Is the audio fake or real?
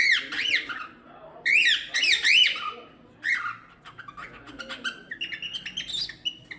real